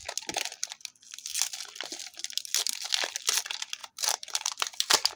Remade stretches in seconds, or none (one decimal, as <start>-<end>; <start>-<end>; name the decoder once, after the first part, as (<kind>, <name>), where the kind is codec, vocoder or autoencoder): 3.8-4.6 (vocoder, BigVGAN v2)